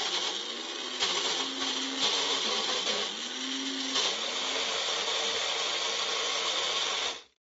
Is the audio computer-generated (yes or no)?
no